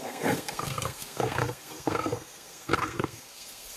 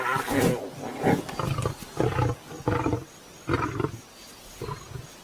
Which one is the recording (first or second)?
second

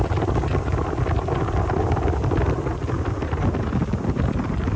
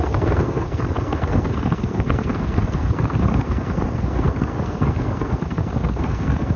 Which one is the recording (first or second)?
first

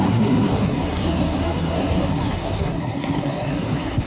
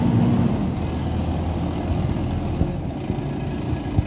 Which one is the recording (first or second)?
second